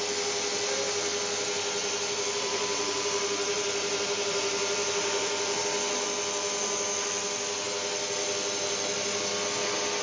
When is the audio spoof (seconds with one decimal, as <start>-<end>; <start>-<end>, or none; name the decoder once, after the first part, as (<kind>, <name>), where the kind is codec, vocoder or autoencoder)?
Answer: 1.8-5.6 (vocoder, BigVGAN v2)